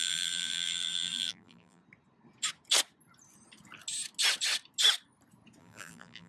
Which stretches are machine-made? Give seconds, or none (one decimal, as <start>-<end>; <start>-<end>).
0.0-1.8; 5.6-6.3